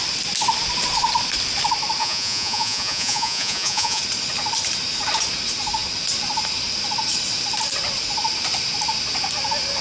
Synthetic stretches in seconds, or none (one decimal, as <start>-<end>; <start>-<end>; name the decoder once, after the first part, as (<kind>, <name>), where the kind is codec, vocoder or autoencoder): 2.0-4.0 (vocoder, Vocos)